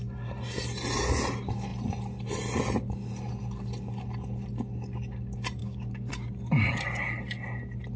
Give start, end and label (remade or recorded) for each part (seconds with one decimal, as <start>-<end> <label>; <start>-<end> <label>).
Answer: 0.0-5.6 recorded; 5.6-6.1 remade; 6.1-8.0 recorded